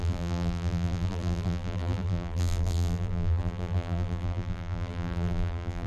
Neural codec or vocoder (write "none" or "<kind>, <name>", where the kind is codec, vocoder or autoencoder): vocoder, BigVGAN v2